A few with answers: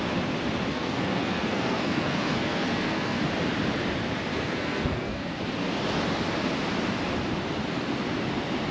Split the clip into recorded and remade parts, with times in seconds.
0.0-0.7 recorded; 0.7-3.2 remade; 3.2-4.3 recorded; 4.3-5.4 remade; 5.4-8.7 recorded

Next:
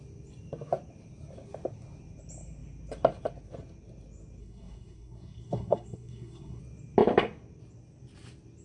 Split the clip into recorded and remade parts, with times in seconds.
0.0-4.4 recorded; 4.4-6.6 remade; 6.6-8.6 recorded

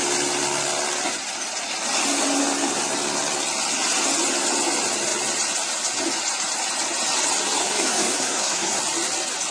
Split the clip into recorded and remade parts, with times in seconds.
0.0-7.6 recorded; 7.6-8.8 remade; 8.8-9.5 recorded